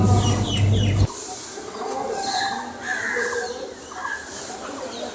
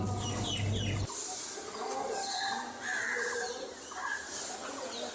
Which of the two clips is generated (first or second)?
first